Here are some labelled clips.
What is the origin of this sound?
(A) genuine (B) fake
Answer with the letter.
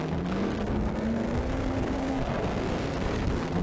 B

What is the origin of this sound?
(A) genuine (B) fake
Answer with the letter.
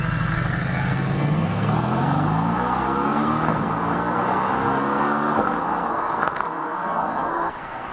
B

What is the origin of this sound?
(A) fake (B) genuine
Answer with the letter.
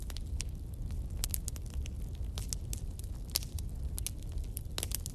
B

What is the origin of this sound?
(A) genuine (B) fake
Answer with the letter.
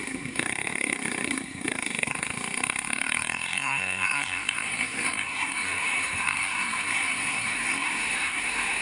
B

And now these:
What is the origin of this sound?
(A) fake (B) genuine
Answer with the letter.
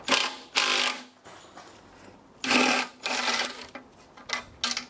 B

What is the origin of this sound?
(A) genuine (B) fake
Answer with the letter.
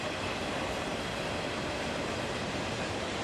A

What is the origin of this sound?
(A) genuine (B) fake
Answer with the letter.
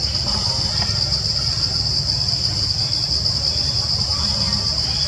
A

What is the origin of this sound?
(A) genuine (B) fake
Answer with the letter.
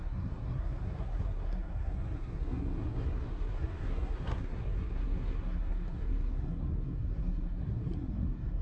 B